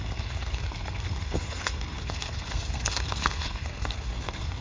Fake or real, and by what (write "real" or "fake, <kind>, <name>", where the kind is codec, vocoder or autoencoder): fake, codec, SNAC